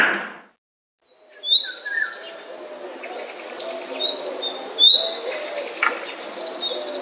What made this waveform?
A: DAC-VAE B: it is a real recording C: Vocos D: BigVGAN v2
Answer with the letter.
B